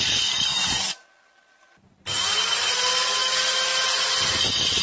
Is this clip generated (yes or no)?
no